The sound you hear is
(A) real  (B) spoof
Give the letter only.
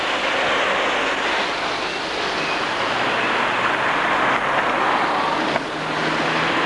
A